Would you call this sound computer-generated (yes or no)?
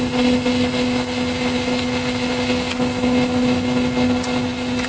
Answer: no